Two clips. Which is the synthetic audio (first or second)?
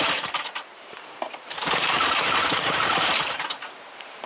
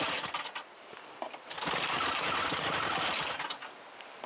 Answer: first